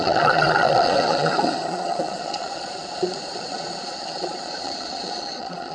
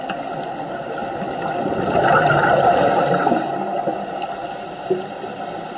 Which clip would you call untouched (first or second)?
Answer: second